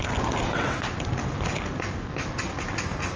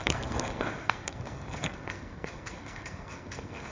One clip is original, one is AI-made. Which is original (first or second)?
first